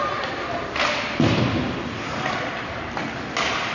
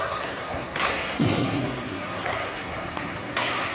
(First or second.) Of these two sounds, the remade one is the second